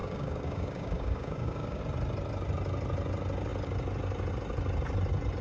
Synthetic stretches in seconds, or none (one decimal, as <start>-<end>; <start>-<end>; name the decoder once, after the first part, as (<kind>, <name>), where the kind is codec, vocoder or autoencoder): 0.0-1.8 (codec, DAC)